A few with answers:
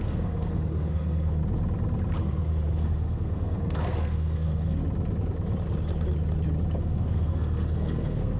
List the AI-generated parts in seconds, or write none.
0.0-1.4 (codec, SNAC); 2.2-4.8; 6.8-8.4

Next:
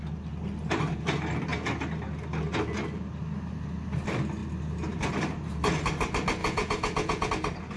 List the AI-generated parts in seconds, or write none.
6.4-7.3 (vocoder, Vocos)

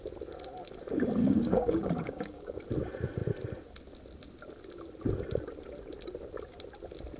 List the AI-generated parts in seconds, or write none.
1.2-2.6 (codec, DAC)

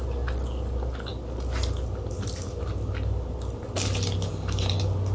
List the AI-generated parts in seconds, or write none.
none

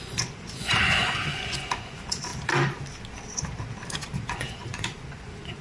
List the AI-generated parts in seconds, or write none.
0.0-2.3 (vocoder, Vocos); 4.2-5.6

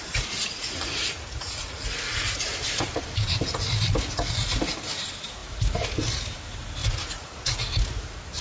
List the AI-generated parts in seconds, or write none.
0.6-2.6 (vocoder, Vocos); 6.8-7.6